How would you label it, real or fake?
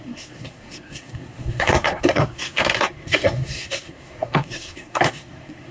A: fake